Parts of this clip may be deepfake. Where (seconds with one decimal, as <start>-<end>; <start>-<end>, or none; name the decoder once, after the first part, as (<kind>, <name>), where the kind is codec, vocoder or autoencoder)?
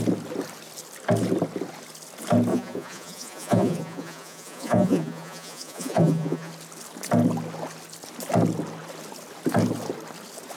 2.5-6.5 (vocoder, Vocos)